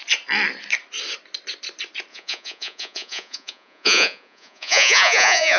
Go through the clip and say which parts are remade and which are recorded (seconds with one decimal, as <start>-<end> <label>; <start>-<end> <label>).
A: 0.0-2.1 recorded; 2.1-5.6 remade